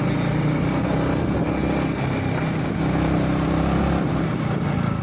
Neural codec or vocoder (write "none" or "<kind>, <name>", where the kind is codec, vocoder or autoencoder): none